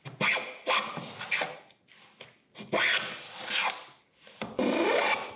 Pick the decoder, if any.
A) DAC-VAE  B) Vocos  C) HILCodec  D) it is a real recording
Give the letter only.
D